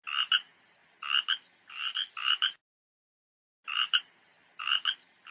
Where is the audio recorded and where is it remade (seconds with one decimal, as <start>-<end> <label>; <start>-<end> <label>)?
0.0-5.3 recorded